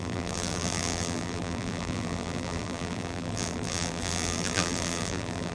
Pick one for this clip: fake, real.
fake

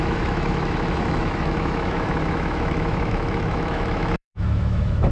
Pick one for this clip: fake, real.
fake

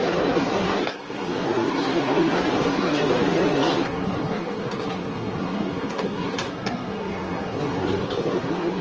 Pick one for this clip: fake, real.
fake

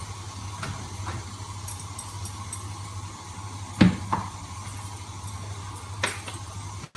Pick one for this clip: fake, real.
real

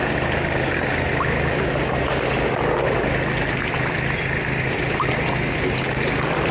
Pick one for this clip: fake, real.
real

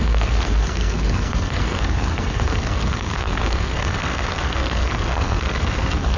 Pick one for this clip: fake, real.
fake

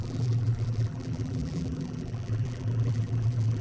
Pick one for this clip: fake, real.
fake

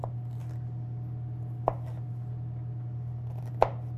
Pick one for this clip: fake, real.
real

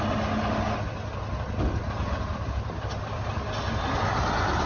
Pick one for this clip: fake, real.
real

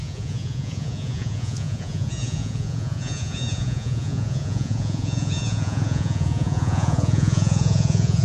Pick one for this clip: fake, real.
fake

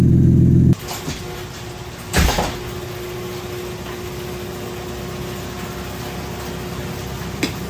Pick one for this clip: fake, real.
real